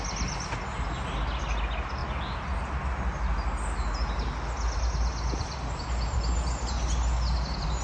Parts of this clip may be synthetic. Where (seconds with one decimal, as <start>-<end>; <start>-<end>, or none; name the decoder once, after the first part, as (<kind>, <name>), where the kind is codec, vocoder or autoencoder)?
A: none